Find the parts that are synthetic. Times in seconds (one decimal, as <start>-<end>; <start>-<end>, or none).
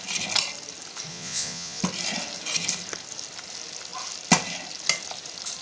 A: 1.1-1.8